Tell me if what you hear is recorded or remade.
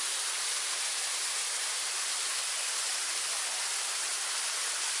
recorded